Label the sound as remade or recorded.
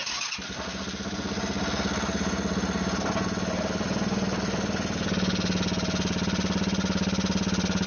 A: recorded